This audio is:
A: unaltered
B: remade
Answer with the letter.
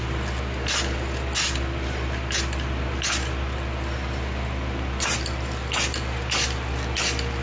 A